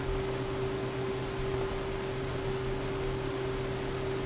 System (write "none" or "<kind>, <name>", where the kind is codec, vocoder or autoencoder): none